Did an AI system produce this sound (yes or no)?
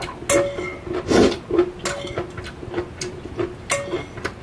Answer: no